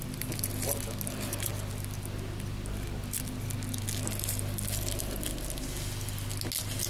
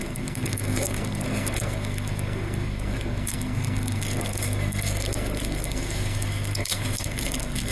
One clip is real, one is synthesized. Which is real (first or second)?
first